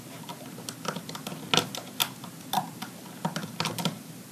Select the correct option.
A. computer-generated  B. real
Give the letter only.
B